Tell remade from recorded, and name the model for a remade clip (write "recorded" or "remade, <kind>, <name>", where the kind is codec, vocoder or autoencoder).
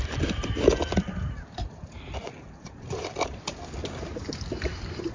recorded